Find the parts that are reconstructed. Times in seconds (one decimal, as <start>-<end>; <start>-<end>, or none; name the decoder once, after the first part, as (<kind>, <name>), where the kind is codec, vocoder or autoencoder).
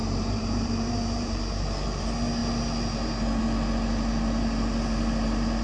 0.0-1.4 (vocoder, BigVGAN v2)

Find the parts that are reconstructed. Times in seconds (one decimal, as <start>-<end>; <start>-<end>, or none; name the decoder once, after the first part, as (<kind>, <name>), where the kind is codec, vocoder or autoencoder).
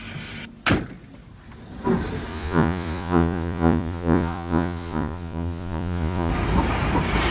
2.3-6.3 (vocoder, Vocos)